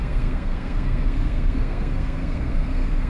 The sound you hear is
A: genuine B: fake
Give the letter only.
B